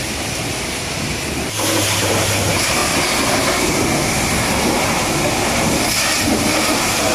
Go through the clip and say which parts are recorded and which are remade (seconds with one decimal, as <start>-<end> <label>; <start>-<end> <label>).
0.0-2.8 remade; 2.8-6.4 recorded; 6.4-7.1 remade